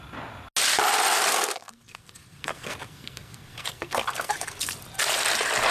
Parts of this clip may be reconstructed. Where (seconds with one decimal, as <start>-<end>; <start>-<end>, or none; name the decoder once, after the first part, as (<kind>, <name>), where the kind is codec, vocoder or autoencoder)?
1.3-4.7 (codec, SNAC)